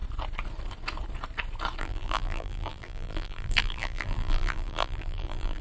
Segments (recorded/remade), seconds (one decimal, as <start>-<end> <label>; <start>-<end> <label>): 0.0-1.8 recorded; 1.8-5.6 remade